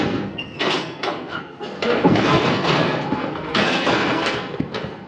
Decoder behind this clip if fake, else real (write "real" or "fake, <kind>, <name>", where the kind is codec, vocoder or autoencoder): fake, codec, SNAC